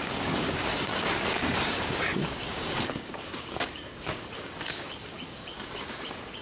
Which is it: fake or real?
fake